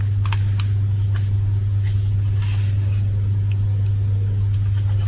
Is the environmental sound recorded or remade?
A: recorded